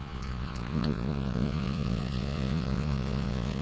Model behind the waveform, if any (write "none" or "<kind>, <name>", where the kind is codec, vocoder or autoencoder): vocoder, Vocos